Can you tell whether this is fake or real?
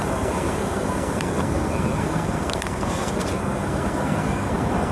fake